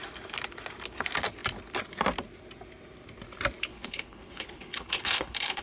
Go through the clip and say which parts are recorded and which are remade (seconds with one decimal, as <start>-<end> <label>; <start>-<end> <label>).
0.0-3.7 recorded; 3.7-5.6 remade